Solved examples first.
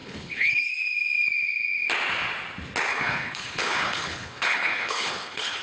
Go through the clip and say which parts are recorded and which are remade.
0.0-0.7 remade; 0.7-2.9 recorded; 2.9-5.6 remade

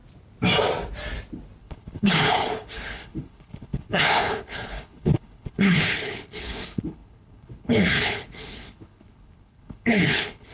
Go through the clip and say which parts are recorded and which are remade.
0.0-1.6 recorded; 1.6-10.5 remade

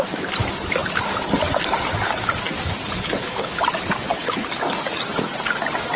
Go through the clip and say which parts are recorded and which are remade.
0.0-2.8 recorded; 2.8-3.6 remade; 3.6-4.1 recorded; 4.1-4.6 remade; 4.6-6.0 recorded

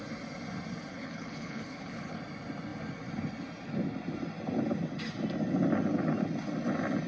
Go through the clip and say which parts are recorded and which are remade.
0.0-0.9 recorded; 0.9-2.2 remade; 2.2-7.1 recorded

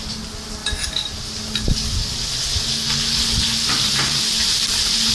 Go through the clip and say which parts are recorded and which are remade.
0.0-5.1 recorded